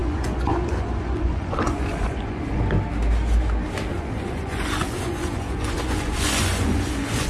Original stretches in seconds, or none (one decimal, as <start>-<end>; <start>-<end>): 2.6-3.9